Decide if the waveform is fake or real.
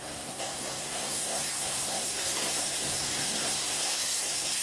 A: fake